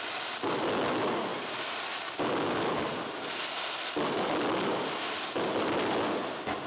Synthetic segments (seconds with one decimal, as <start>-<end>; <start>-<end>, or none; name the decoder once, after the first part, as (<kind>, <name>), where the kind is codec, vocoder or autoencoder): none